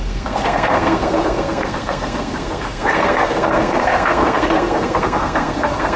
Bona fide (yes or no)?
no